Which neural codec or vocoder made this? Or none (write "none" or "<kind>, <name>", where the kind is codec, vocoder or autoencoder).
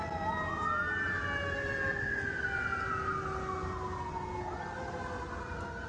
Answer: none